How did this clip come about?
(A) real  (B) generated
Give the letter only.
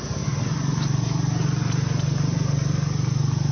A